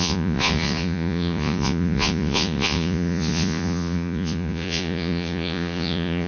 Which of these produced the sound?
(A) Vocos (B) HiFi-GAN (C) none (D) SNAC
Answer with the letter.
A